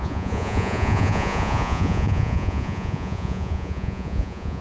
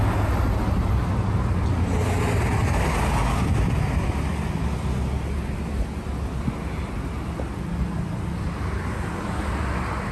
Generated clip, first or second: first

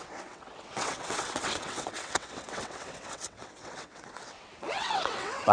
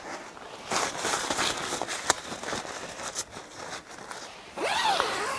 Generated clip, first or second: first